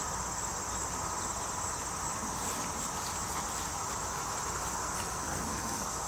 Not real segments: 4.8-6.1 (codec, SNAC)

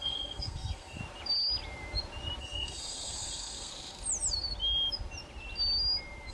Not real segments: 0.0-1.0 (codec, SNAC); 2.4-3.7

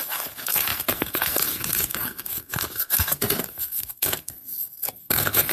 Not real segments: 0.0-5.5 (codec, SNAC)